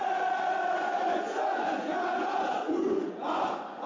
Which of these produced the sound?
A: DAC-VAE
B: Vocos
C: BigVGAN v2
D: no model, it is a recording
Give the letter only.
B